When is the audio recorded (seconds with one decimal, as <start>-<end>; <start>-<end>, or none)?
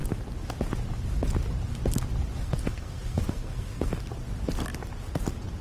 0.0-2.4; 4.1-5.6